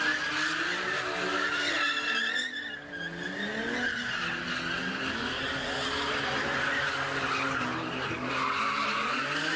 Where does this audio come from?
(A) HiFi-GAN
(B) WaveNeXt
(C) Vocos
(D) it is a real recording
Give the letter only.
D